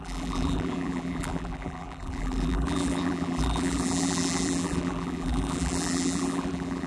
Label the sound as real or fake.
fake